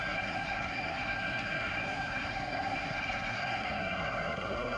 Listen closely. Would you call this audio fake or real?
fake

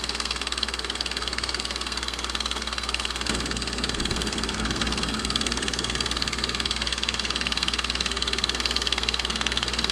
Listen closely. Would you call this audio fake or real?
fake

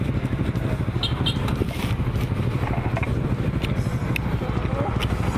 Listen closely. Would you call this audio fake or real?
real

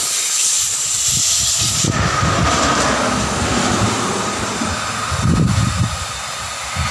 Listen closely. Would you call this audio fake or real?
real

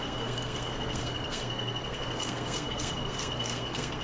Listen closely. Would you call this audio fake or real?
fake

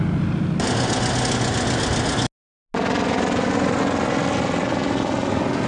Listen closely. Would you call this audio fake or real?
real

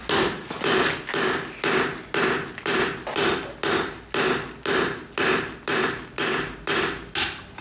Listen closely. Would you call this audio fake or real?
real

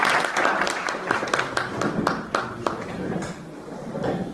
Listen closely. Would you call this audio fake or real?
real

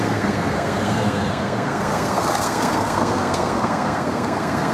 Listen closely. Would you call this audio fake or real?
fake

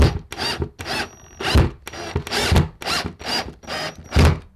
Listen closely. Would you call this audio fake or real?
real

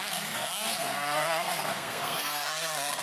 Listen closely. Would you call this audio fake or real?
fake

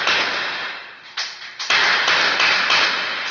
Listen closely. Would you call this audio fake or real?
real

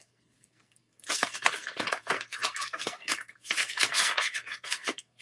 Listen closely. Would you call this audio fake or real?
fake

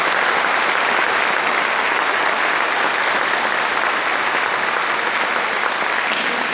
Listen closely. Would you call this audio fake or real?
real